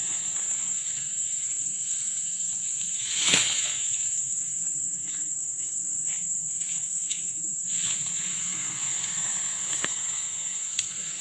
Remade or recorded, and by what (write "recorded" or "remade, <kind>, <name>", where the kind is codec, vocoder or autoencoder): remade, codec, SNAC